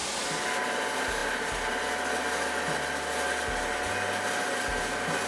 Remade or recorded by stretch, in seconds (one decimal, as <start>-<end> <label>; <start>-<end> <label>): 0.0-5.3 recorded